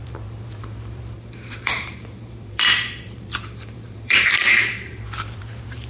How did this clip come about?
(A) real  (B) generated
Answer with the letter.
B